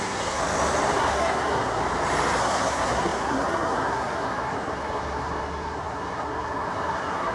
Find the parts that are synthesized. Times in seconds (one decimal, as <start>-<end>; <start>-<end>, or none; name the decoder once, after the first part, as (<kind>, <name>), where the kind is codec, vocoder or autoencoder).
0.0-0.4 (codec, SNAC); 1.0-1.8; 2.4-7.3